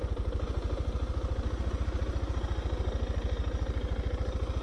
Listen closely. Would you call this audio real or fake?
real